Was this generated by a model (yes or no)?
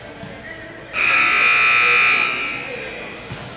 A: no